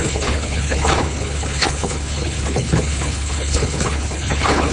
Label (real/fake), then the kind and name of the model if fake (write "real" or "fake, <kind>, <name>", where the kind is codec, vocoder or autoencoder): fake, codec, HILCodec